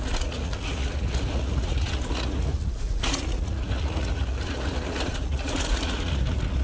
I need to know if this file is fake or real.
fake